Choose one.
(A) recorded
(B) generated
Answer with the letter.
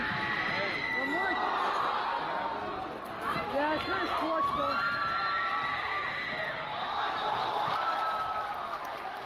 A